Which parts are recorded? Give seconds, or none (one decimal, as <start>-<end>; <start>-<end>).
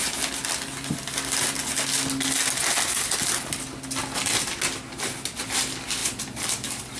0.0-6.0